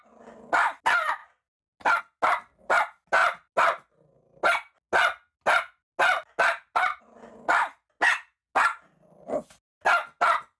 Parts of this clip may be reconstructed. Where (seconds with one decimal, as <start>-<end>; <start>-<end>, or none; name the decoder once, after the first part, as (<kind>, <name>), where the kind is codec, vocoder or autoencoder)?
none